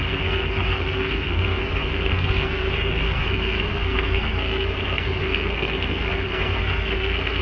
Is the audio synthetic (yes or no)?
yes